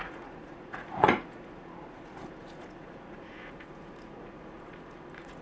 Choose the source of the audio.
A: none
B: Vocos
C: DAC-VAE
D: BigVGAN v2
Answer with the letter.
B